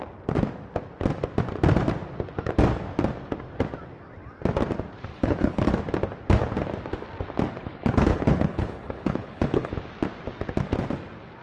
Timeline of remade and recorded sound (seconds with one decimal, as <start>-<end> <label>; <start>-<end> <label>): 0.0-5.1 recorded; 5.1-5.7 remade; 5.7-7.6 recorded; 7.6-9.7 remade; 9.7-11.4 recorded